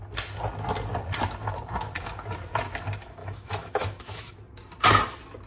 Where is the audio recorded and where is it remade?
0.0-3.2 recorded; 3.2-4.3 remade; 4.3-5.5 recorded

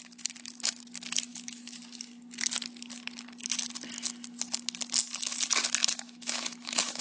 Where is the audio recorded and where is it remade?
0.0-1.3 recorded; 1.3-1.8 remade; 1.8-5.8 recorded; 5.8-7.0 remade